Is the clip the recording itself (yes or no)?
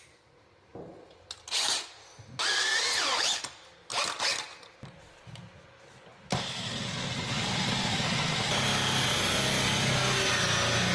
yes